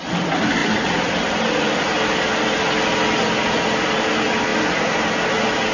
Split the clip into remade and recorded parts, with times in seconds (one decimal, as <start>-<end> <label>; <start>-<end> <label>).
0.0-0.6 recorded; 0.6-1.8 remade; 1.8-5.7 recorded